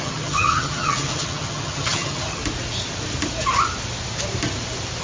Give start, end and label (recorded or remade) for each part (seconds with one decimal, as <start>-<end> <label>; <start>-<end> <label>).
0.0-2.4 remade; 2.4-5.0 recorded